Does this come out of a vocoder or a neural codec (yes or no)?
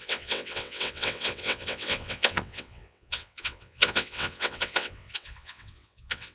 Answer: yes